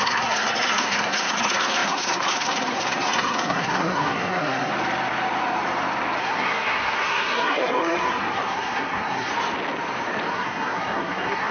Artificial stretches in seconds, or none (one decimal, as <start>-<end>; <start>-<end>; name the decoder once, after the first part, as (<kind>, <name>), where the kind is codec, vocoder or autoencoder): 0.0-4.7 (codec, SNAC); 6.2-9.3; 10.3-11.5